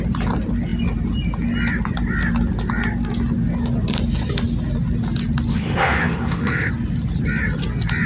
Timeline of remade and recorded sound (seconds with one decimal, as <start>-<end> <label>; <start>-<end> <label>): 0.0-5.5 recorded; 5.5-6.7 remade; 6.7-8.1 recorded